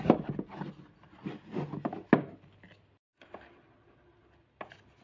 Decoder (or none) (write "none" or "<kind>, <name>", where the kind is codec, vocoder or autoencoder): none